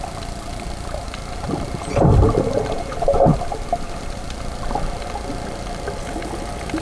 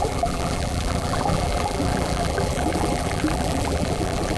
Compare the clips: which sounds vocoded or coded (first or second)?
second